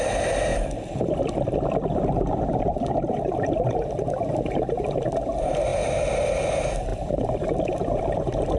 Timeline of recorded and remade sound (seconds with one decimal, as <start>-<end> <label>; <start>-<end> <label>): 0.0-0.5 recorded; 0.5-4.8 remade; 4.8-5.7 recorded; 5.7-6.5 remade; 6.5-6.9 recorded; 6.9-8.0 remade; 8.0-8.6 recorded